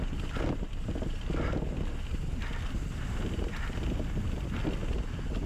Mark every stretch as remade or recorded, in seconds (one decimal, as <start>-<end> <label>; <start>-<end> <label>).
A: 0.0-5.5 recorded